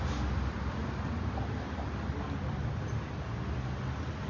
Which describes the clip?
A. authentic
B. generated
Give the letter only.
A